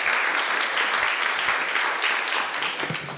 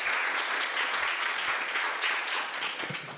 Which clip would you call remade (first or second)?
second